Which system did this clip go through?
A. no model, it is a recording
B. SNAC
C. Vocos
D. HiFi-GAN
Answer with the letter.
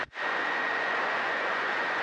C